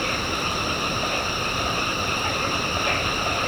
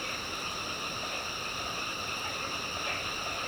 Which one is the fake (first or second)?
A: first